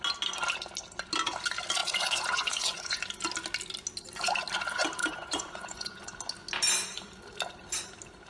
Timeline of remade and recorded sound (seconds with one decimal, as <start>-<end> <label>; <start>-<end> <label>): 0.0-1.8 recorded; 1.8-3.0 remade; 3.0-5.0 recorded; 5.0-6.1 remade; 6.1-8.3 recorded